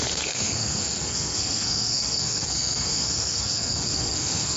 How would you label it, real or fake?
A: fake